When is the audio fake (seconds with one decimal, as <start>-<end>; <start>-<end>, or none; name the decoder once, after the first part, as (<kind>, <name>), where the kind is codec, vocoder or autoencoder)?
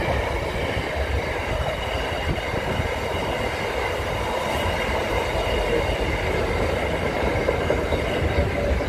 5.2-5.9 (vocoder, BigVGAN v2)